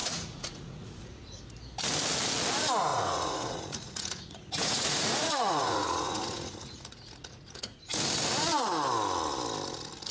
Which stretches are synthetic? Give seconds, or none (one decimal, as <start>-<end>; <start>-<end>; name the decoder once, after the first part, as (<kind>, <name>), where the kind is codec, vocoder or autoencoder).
0.0-1.4 (vocoder, Vocos); 2.9-7.8